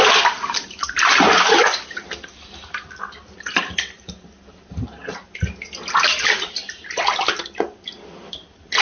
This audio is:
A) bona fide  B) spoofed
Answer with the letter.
A